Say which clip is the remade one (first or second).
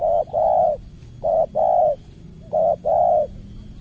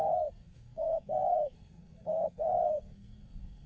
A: second